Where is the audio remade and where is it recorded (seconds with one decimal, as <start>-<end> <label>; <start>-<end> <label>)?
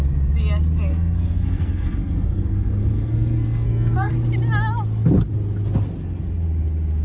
0.0-0.9 recorded; 0.9-4.1 remade; 4.1-7.0 recorded